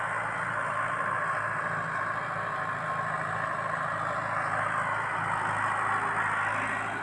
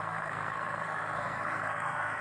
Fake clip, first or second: second